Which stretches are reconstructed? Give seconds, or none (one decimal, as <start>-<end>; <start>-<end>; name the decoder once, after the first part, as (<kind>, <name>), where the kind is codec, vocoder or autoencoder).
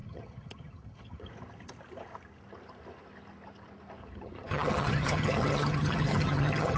0.0-1.3 (vocoder, HiFi-GAN); 4.0-6.8